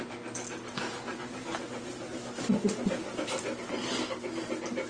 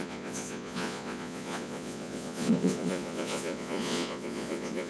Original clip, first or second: first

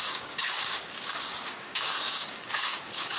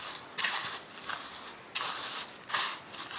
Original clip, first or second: second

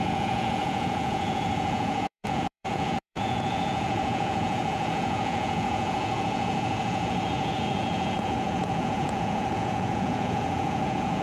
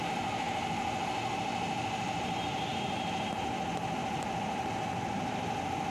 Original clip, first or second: second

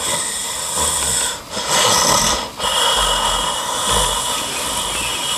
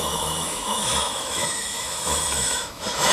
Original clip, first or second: first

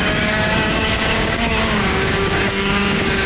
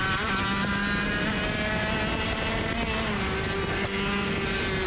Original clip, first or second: second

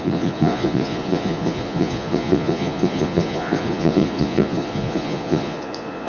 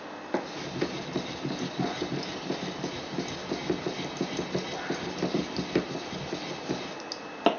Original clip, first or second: second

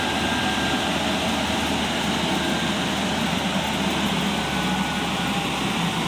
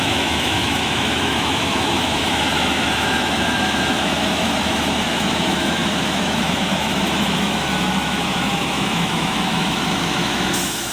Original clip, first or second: first